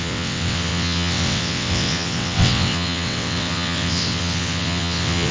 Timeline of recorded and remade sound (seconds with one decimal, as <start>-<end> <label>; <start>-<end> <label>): 0.0-5.3 remade